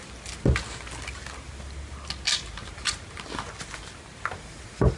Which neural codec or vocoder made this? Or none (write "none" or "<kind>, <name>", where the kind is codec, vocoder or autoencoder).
none